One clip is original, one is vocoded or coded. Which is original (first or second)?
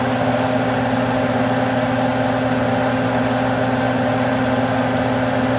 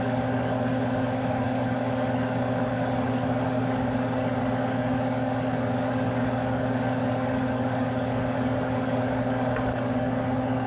first